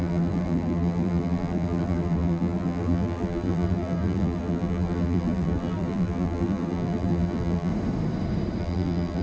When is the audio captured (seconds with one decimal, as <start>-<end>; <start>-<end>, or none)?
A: 7.7-8.6

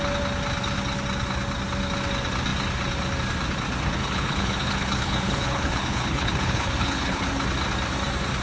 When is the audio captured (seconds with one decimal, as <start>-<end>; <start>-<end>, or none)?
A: 0.0-4.0; 7.3-8.4

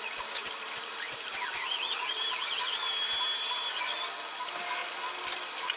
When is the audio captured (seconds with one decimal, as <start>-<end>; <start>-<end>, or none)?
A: 0.0-0.4; 2.6-5.8

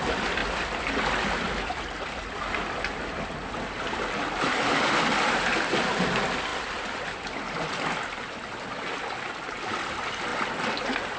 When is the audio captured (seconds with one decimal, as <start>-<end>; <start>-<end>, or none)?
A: 0.0-11.2

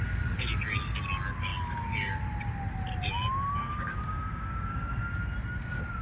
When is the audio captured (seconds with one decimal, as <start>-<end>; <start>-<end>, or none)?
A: 0.0-3.6; 5.1-6.0

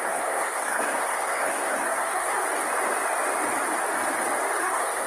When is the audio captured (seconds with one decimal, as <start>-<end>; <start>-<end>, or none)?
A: 2.4-4.6

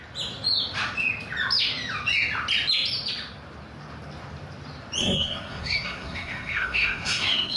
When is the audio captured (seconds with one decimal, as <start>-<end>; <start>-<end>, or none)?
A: 0.0-5.0

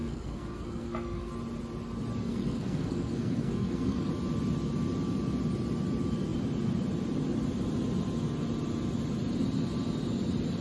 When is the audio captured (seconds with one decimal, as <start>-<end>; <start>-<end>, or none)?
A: 1.3-2.2; 4.1-10.6